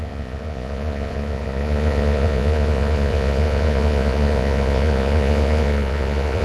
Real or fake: fake